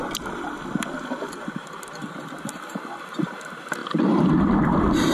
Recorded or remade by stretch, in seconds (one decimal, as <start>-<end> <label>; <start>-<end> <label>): 0.0-3.1 remade; 3.1-3.8 recorded; 3.8-5.1 remade